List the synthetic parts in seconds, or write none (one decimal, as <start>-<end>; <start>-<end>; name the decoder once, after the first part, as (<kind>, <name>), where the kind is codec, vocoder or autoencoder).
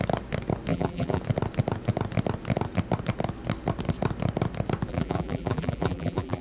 0.7-1.2 (vocoder, BigVGAN v2); 4.9-6.4